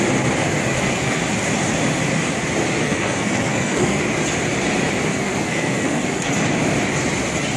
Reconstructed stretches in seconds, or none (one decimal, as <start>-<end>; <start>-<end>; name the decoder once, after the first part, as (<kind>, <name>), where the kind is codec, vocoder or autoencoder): 0.7-1.2 (codec, SNAC); 2.8-4.0; 5.1-6.3